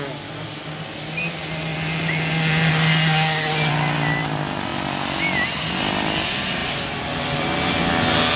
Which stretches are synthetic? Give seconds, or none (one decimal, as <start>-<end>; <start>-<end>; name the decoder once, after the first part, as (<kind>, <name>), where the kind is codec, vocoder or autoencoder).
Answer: none